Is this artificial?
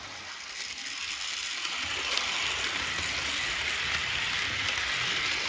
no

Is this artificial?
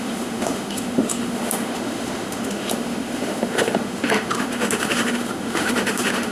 yes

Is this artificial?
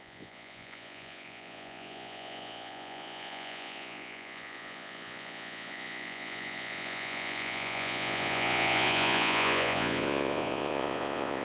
yes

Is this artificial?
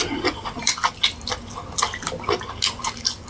no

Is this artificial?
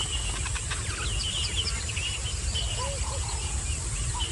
no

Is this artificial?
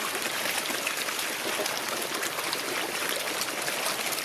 no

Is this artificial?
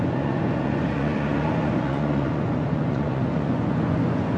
yes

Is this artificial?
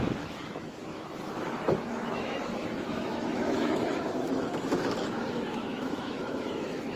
yes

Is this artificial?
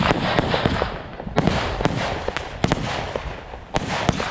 no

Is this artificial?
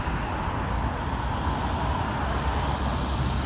no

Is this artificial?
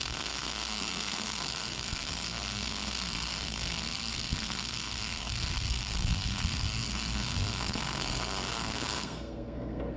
yes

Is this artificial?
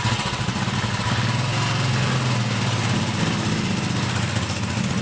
no